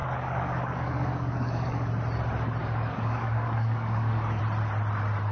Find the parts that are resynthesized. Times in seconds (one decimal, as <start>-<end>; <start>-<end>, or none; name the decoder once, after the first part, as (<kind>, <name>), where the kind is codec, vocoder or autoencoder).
0.0-1.9 (codec, DAC); 2.6-4.4